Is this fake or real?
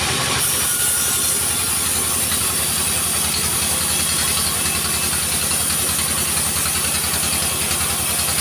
real